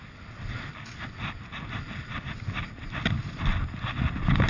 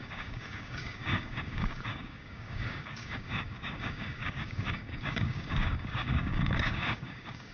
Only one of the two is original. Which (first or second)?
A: first